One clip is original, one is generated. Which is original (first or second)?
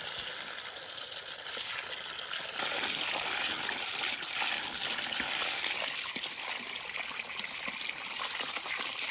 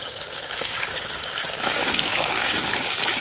first